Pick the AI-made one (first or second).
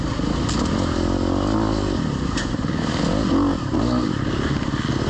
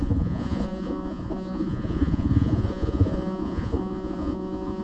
second